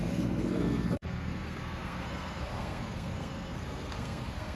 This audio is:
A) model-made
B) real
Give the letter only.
A